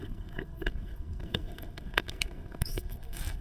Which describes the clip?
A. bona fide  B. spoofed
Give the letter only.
B